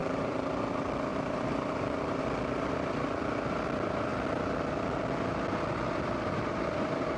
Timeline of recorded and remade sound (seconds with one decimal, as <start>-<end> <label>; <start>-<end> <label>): 0.0-0.6 remade; 0.6-1.1 recorded; 1.1-2.2 remade; 2.2-7.2 recorded